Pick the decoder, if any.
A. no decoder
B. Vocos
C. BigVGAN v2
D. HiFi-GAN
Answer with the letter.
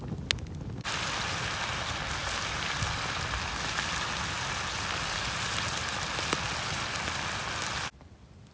A